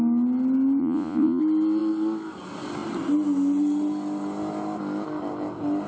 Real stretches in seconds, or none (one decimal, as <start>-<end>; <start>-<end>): 0.0-0.8; 1.4-5.9